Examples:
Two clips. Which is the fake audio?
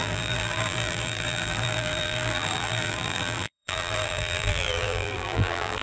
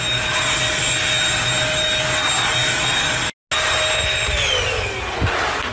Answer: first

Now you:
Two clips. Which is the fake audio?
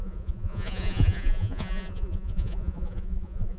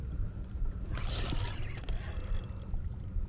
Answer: first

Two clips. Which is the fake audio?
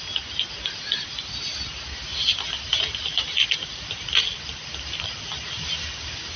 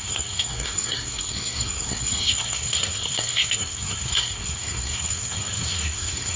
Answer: second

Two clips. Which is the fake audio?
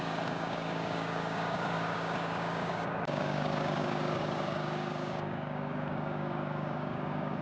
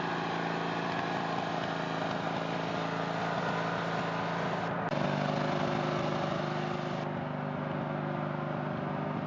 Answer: first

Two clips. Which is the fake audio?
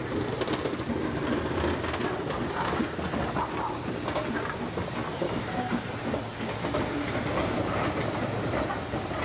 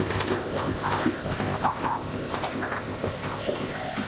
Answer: second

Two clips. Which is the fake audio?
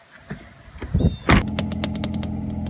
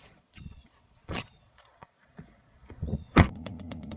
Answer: second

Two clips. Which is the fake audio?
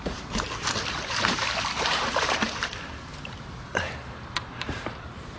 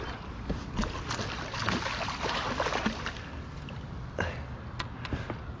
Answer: first